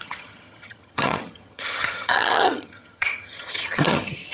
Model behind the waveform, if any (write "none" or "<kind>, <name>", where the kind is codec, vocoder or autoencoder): vocoder, HiFi-GAN